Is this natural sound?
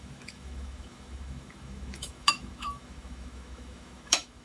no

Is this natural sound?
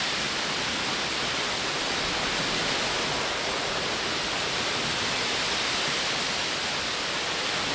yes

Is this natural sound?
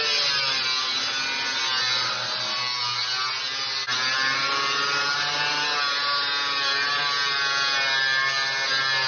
yes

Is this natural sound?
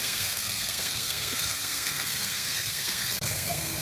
no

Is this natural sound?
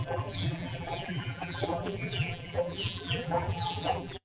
no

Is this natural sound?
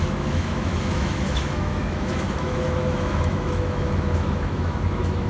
no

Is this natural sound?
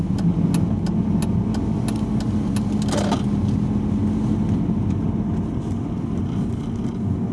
yes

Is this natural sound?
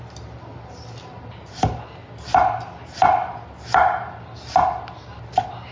yes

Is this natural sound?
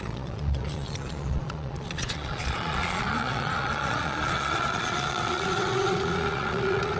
no